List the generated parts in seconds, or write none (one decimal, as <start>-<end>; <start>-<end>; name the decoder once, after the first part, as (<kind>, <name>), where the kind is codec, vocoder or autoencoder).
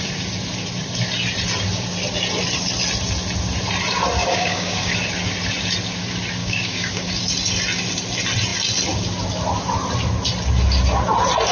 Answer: 4.2-4.9 (codec, DAC); 6.4-7.1